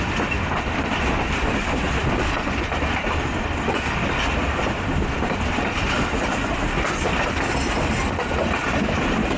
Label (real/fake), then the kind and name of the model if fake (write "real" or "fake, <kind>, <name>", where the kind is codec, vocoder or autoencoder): fake, vocoder, BigVGAN v2